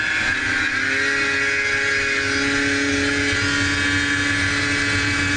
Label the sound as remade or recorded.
recorded